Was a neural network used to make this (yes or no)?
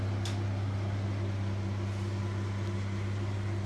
no